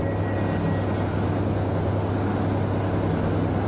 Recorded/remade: recorded